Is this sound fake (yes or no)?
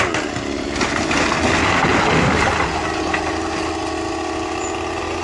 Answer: no